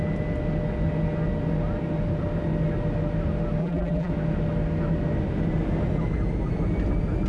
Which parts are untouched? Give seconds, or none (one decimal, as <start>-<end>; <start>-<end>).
0.0-3.6; 4.1-7.3